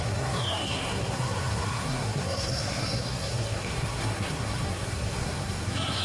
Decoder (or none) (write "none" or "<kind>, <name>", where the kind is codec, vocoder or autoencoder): codec, SNAC